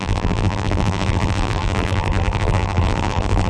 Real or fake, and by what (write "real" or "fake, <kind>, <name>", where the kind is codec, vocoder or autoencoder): fake, vocoder, BigVGAN v2